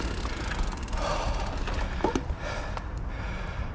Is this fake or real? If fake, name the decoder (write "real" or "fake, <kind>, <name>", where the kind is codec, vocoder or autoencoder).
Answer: real